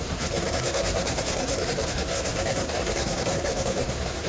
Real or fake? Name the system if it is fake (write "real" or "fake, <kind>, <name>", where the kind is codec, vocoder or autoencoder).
fake, codec, SNAC